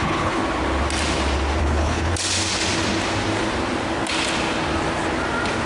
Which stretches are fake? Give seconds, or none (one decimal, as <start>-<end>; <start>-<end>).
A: 0.0-0.4; 1.6-2.1